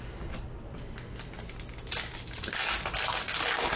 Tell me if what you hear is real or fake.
real